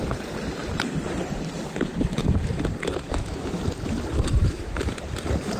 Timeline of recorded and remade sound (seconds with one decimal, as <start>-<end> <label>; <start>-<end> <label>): 0.0-2.9 recorded; 2.9-3.6 remade; 3.6-4.4 recorded; 4.4-4.9 remade; 4.9-5.6 recorded